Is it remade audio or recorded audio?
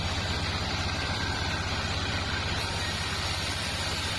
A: remade